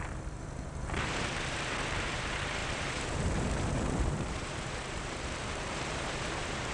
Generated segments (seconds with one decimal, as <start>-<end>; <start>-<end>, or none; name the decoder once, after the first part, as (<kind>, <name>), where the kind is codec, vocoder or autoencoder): 0.0-6.7 (vocoder, BigVGAN v2)